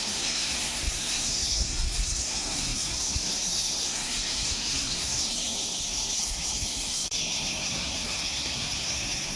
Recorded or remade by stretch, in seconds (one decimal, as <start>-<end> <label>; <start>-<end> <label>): 0.0-9.4 remade